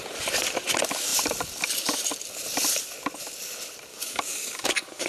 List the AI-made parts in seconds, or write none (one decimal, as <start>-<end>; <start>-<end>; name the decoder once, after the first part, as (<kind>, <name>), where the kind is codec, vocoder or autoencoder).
3.9-5.1 (codec, DAC)